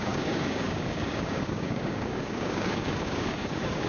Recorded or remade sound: remade